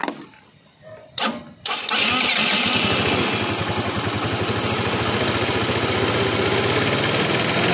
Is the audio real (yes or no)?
yes